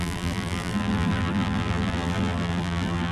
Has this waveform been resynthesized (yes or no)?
yes